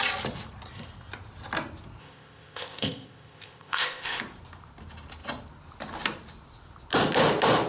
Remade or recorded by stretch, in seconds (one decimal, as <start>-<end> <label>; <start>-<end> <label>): 0.0-2.0 recorded; 2.0-4.2 remade; 4.2-7.7 recorded